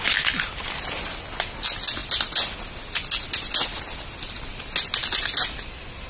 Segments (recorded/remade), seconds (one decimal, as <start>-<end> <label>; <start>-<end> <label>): 0.0-6.1 recorded